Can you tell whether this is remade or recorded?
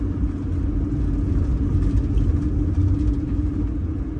recorded